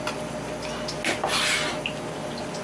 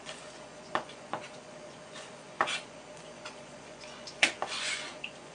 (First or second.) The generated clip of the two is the second